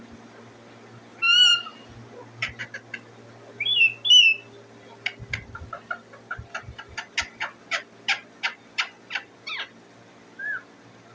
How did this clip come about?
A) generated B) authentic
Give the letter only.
B